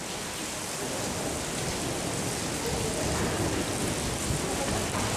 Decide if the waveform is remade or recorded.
recorded